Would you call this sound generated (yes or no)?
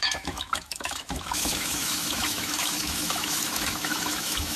yes